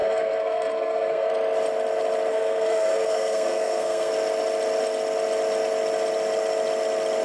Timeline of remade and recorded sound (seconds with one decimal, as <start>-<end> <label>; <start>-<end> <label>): 0.0-1.3 remade; 1.3-2.3 recorded; 2.3-4.1 remade; 4.1-7.2 recorded